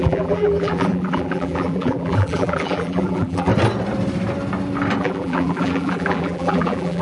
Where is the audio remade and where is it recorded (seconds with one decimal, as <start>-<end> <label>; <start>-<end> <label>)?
0.0-3.5 remade; 3.5-5.0 recorded; 5.0-7.0 remade